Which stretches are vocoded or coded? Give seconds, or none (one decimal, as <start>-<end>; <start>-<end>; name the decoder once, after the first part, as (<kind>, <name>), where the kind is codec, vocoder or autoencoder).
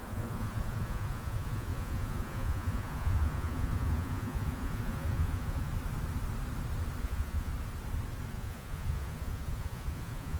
0.0-5.7 (vocoder, Vocos); 7.0-7.5; 8.3-10.4